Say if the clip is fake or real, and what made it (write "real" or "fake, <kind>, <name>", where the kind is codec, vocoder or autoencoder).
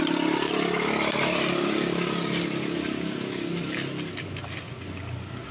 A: real